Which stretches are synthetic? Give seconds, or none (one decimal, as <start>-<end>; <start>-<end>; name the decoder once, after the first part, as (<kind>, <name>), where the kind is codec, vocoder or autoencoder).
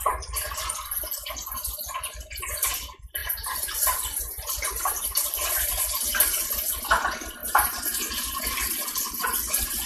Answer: 3.2-5.7 (vocoder, BigVGAN v2); 7.4-8.7